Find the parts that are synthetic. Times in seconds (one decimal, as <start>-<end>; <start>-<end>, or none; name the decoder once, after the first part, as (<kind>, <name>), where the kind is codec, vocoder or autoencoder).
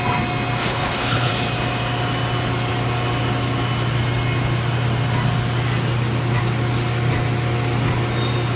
0.6-1.3 (codec, HILCodec)